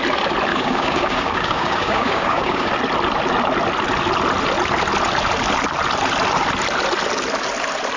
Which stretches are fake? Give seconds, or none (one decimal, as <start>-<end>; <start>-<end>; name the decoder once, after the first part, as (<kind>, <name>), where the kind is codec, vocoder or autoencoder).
0.5-2.7 (codec, DAC)